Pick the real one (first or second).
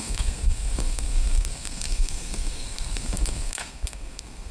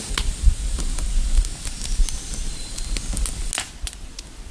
second